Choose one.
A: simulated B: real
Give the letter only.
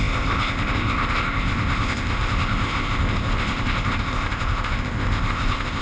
A